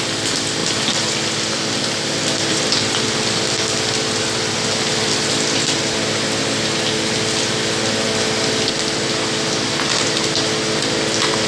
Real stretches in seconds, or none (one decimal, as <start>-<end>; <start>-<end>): 0.0-11.5

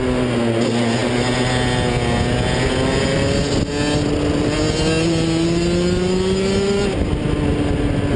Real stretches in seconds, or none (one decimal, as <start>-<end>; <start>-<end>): 0.0-8.2

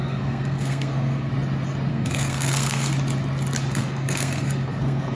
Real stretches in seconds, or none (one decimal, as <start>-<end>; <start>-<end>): 1.3-1.9; 2.9-3.7